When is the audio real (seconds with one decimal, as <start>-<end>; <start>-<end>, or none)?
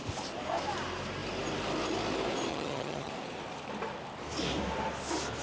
0.0-2.5; 3.1-5.4